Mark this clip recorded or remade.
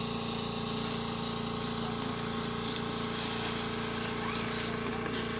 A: recorded